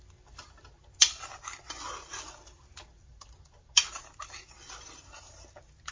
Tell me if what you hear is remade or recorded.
recorded